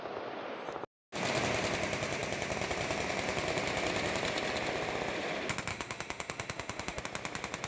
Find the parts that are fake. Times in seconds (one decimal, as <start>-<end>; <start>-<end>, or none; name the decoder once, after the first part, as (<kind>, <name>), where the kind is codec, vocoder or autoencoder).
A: 5.7-7.0 (autoencoder, DAC-VAE)